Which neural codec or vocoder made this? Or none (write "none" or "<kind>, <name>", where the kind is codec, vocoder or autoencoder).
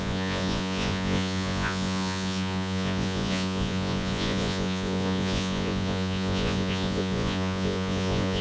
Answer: vocoder, Vocos